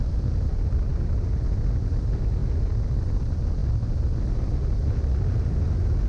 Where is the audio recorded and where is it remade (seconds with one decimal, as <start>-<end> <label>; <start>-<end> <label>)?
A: 0.0-6.1 recorded